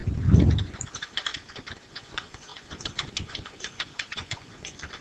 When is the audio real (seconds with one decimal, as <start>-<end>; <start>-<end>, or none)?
0.0-0.6; 1.3-1.9